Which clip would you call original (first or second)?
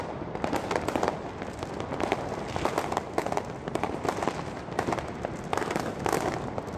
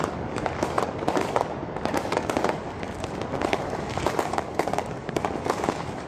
first